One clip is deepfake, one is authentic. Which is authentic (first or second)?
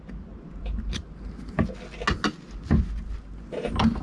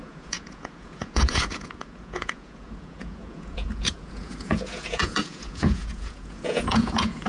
first